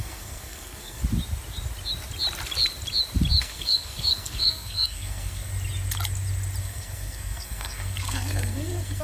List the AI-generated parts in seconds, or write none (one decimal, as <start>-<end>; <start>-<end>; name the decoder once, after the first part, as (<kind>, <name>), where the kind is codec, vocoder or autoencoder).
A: 0.0-1.0 (codec, SNAC); 3.4-5.5; 6.6-9.0